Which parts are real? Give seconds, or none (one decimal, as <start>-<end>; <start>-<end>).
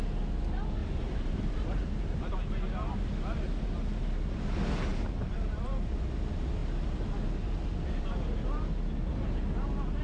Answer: 0.0-0.8; 2.3-4.9; 6.0-10.0